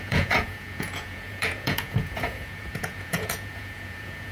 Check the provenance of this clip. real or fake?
fake